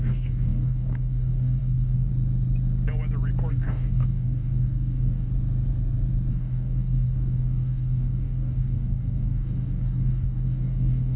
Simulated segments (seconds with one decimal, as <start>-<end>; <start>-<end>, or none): 0.0-2.1; 3.5-5.3; 6.3-11.2